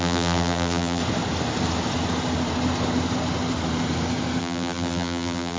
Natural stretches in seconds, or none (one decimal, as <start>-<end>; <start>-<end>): 1.0-4.4